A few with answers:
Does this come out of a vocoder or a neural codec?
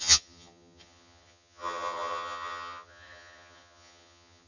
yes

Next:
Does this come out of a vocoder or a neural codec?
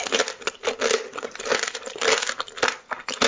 no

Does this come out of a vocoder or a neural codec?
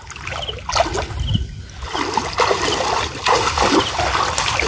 no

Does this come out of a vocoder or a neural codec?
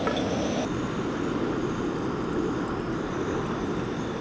no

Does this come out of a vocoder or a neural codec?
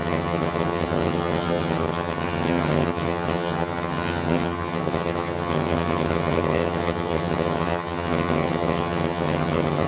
yes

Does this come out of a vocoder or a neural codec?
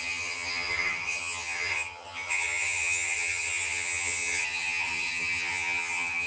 yes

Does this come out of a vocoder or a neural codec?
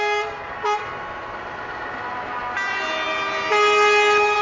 no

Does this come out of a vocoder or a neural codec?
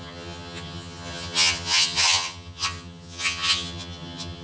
yes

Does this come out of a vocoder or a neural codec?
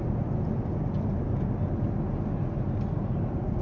no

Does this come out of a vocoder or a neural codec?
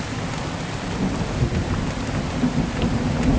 no